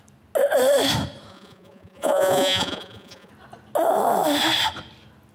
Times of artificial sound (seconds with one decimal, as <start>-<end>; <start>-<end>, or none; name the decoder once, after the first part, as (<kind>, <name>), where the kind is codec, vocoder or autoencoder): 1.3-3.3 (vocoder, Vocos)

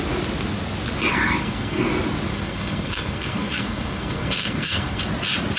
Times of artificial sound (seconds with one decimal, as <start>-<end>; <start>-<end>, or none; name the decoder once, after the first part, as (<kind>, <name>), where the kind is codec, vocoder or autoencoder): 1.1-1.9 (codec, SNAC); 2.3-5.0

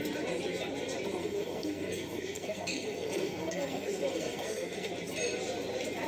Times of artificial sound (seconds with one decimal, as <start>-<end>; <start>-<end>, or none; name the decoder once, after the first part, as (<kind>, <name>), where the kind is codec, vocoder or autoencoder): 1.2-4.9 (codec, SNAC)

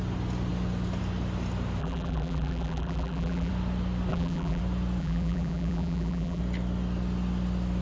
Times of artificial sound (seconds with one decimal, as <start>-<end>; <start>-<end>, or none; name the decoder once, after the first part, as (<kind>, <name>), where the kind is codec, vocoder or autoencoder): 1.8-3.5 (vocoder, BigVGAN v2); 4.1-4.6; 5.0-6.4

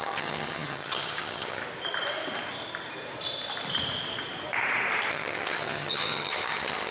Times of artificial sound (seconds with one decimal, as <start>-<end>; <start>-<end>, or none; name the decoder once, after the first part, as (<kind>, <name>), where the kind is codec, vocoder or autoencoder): 0.0-1.6 (vocoder, HiFi-GAN); 5.1-6.9

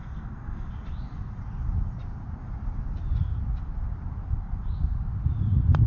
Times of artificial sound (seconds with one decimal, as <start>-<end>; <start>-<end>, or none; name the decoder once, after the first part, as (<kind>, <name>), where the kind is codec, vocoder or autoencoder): 0.0-0.7 (codec, SNAC)